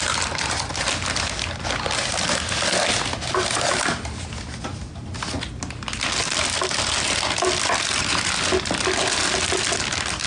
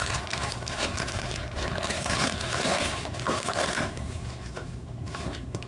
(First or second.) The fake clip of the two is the second